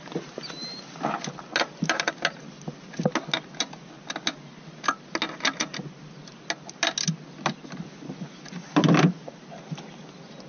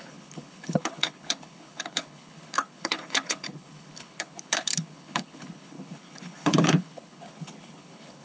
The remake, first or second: second